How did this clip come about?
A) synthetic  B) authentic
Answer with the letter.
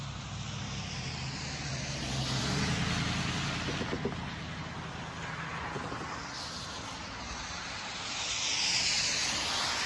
B